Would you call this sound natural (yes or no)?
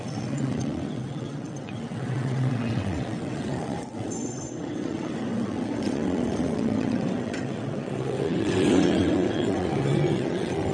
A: no